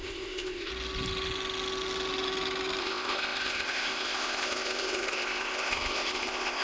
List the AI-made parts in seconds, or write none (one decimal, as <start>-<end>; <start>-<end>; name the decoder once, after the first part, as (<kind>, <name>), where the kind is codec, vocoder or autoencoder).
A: 0.0-0.7 (codec, ZipCodec); 2.8-6.6